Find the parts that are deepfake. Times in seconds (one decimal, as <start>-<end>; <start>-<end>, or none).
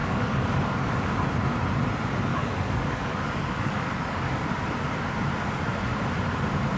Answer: 0.0-1.1; 2.3-4.5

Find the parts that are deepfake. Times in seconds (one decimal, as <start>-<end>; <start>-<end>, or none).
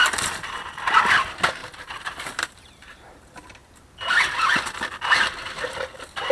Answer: 1.6-3.1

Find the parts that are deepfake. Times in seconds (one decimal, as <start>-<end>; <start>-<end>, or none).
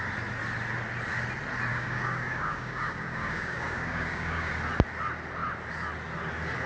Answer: 1.7-4.5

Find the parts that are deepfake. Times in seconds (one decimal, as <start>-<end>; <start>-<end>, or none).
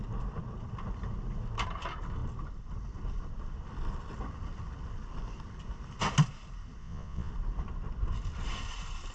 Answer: 6.8-7.3